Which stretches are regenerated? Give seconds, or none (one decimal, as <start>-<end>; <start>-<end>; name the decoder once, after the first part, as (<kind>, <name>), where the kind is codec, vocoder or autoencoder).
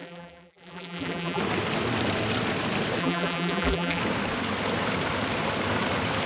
0.0-1.4 (vocoder, BigVGAN v2); 3.0-4.0